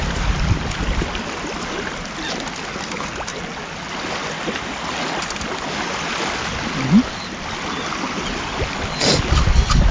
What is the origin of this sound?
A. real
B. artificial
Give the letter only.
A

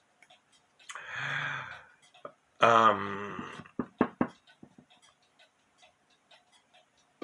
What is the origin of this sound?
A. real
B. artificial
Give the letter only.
A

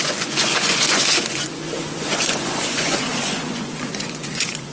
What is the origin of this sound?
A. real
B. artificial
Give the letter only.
B